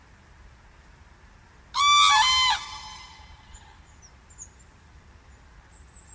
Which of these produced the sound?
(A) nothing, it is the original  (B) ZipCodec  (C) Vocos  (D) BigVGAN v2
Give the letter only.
A